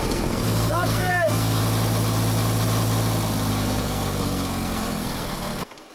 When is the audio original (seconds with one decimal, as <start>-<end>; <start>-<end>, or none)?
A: 1.6-3.5